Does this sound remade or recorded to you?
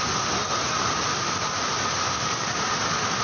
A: recorded